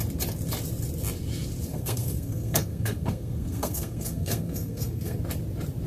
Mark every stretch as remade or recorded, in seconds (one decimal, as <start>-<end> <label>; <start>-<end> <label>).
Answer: 0.0-1.7 recorded; 1.7-5.2 remade; 5.2-5.9 recorded